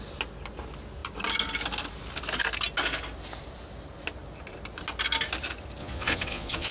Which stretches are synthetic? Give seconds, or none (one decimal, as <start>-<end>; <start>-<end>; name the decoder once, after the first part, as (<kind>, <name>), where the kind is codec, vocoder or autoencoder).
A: 5.8-6.7 (vocoder, Vocos)